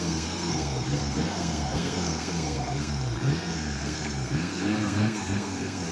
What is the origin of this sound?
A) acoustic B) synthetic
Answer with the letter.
B